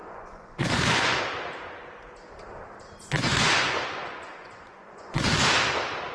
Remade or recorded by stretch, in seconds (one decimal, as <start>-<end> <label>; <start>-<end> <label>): 0.0-1.2 remade; 1.2-3.2 recorded; 3.2-5.2 remade; 5.2-6.1 recorded